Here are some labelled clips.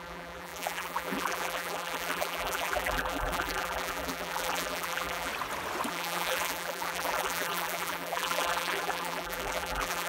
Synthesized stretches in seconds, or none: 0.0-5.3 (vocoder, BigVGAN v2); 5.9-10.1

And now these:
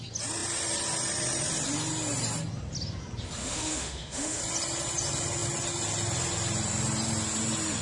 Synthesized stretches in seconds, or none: 3.4-4.4 (autoencoder, DAC-VAE)

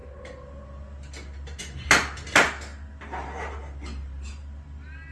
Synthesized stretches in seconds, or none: none

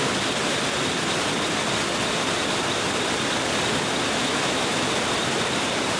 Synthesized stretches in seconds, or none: 4.2-4.8 (autoencoder, DAC-VAE)